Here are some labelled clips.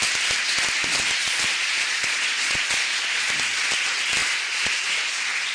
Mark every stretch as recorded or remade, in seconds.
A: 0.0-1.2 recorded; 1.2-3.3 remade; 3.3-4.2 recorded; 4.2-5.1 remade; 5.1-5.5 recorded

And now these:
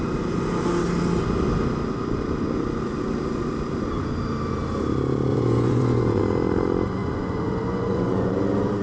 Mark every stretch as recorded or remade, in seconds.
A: 0.0-5.3 recorded; 5.3-6.2 remade; 6.2-7.0 recorded; 7.0-8.3 remade; 8.3-8.8 recorded

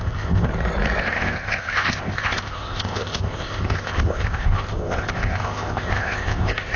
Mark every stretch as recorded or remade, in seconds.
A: 0.0-0.5 remade; 0.5-1.0 recorded; 1.0-6.8 remade

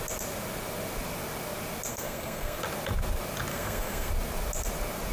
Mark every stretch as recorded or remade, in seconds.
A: 0.0-1.9 recorded; 1.9-2.6 remade; 2.6-3.5 recorded; 3.5-4.1 remade; 4.1-5.1 recorded